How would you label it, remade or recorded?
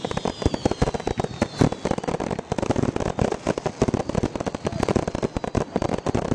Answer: recorded